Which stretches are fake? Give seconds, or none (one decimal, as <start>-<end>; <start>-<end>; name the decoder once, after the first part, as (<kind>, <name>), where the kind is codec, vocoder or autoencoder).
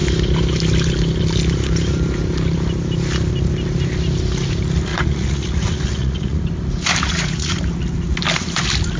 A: 4.9-6.4 (vocoder, Vocos); 7.1-7.6